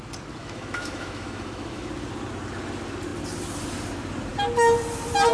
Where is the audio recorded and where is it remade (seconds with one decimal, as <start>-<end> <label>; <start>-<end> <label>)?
0.0-0.4 recorded; 0.4-1.9 remade; 1.9-5.3 recorded